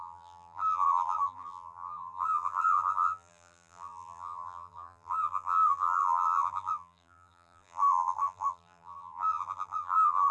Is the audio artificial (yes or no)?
yes